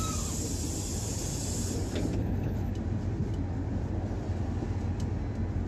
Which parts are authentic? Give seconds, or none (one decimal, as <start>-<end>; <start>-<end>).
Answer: 0.0-2.2; 2.7-5.7